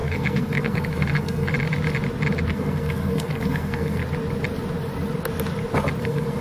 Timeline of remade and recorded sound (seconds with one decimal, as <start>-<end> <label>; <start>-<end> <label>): 0.0-1.5 remade; 1.5-2.5 recorded; 2.5-4.0 remade; 4.0-6.0 recorded; 6.0-6.4 remade